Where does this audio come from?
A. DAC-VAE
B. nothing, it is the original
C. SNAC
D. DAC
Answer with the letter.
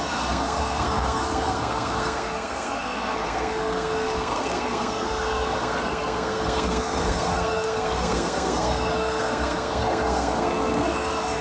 C